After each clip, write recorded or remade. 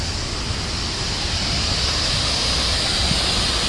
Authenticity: recorded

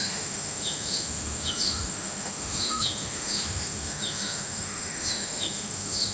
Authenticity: remade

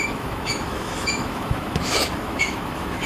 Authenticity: remade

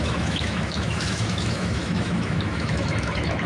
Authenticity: remade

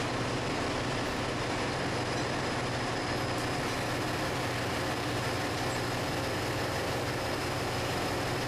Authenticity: recorded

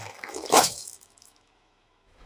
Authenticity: remade